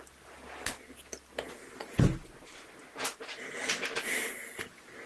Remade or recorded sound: recorded